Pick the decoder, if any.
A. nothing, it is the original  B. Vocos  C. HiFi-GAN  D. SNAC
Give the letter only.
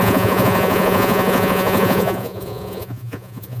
B